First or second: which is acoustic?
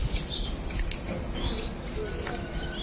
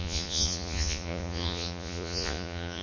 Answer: first